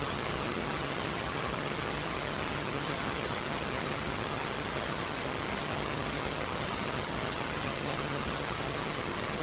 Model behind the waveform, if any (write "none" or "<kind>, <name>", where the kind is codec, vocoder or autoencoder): vocoder, HiFi-GAN